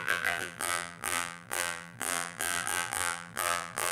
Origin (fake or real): fake